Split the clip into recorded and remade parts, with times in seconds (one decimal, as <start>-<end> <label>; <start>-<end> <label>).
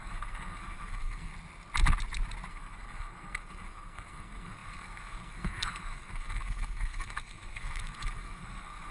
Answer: 0.0-1.3 remade; 1.3-2.5 recorded; 2.5-8.9 remade